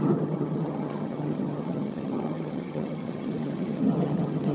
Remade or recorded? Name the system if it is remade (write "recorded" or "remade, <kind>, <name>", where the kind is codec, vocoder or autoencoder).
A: remade, vocoder, HiFi-GAN